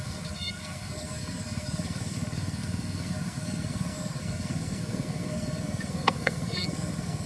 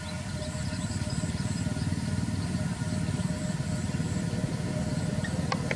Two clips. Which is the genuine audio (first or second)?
second